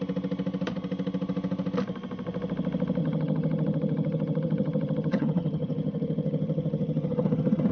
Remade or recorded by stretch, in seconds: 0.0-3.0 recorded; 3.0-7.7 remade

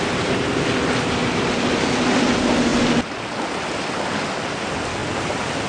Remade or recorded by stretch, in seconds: 0.0-5.7 recorded

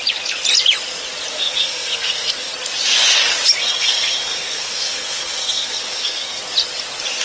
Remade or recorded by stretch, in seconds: 0.0-1.3 recorded; 1.3-2.5 remade; 2.5-3.6 recorded; 3.6-6.4 remade; 6.4-7.2 recorded

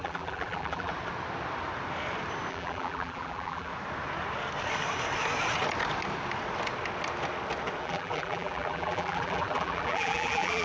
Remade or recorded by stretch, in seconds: 0.0-0.9 remade; 0.9-2.5 recorded; 2.5-3.7 remade; 3.7-7.8 recorded; 7.8-10.6 remade

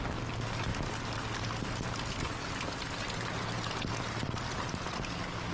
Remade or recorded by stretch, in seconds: 0.0-5.5 recorded